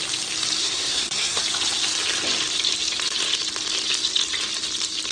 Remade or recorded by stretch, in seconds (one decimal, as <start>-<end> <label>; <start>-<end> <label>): 0.0-0.6 recorded; 0.6-1.4 remade; 1.4-5.1 recorded